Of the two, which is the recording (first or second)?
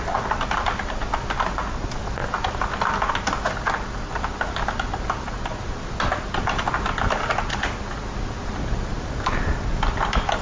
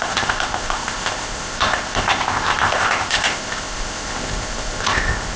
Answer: first